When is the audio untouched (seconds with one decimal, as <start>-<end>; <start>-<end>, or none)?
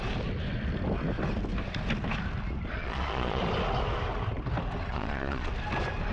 0.0-2.8; 3.4-4.9; 5.5-6.1